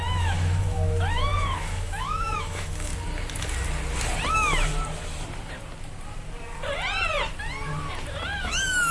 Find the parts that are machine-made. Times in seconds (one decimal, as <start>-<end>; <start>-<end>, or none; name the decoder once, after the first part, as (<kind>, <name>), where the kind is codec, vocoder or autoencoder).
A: 0.0-2.9 (autoencoder, DAC-VAE); 4.3-4.7; 8.4-8.9